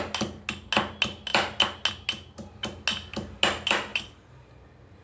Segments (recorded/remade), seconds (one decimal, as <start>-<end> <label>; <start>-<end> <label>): 0.0-3.9 recorded; 3.9-4.5 remade; 4.5-5.0 recorded